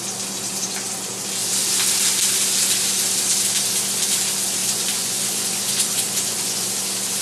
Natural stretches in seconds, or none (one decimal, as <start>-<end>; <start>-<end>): 0.0-4.6; 6.7-7.2